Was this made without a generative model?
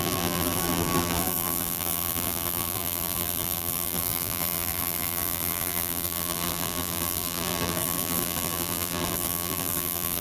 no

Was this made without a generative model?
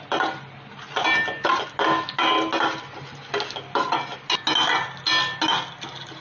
yes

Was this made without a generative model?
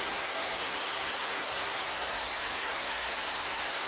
no